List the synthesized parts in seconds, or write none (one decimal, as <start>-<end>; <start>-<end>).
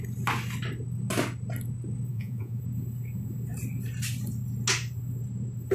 2.1-2.6